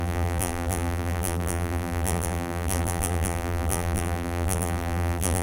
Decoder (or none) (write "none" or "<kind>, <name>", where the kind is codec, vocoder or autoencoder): vocoder, BigVGAN v2